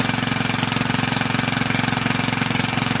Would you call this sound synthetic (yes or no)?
no